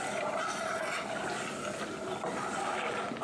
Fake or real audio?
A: real